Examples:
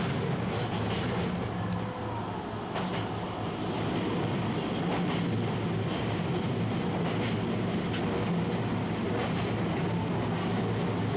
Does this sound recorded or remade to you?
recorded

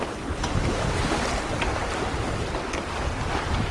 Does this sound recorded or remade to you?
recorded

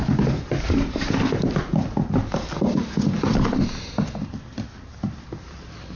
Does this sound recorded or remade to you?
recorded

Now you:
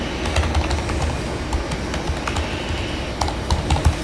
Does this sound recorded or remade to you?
recorded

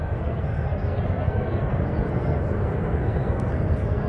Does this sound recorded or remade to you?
remade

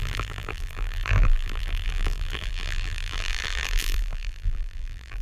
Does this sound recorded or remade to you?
remade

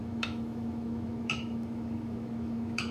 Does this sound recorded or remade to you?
remade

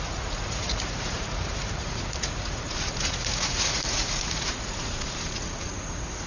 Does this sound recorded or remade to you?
remade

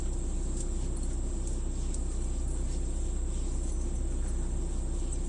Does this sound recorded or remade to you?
recorded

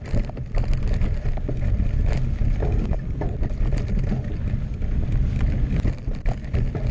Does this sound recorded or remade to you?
recorded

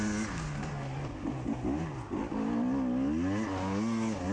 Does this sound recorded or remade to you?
recorded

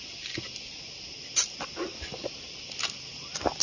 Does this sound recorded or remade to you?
recorded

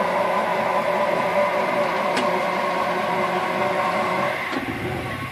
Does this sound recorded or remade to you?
recorded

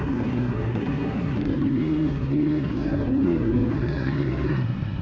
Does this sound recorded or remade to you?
remade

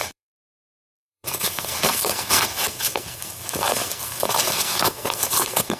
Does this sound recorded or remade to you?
remade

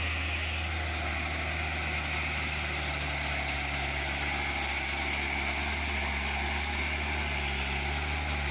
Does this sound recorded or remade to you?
recorded